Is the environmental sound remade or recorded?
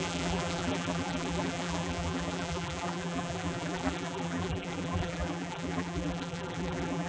remade